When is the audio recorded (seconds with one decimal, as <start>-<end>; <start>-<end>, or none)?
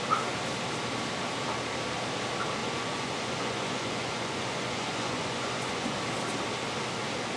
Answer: 0.0-2.6; 6.0-7.4